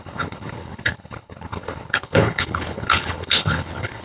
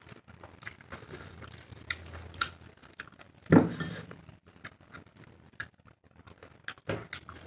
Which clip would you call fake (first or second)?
first